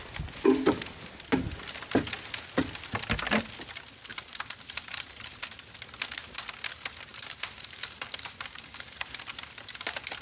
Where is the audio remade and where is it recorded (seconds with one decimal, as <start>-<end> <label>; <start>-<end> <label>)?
0.0-4.1 recorded; 4.1-5.4 remade; 5.4-7.1 recorded; 7.1-9.3 remade; 9.3-10.2 recorded